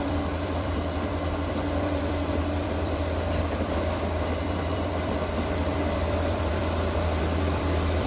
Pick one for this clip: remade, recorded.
remade